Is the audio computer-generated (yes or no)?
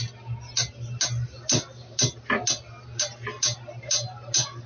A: no